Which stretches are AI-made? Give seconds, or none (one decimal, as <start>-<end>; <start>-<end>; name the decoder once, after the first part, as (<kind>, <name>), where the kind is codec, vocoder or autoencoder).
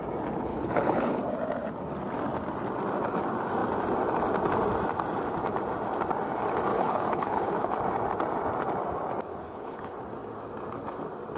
0.5-1.2 (codec, HILCodec); 6.7-7.8; 9.3-10.0